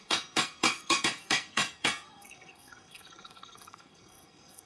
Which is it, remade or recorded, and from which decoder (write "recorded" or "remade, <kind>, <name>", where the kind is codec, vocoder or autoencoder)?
remade, codec, SNAC